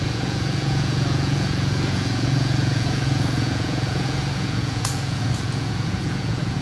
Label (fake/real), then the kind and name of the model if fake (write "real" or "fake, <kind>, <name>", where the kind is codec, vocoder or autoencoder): fake, vocoder, Vocos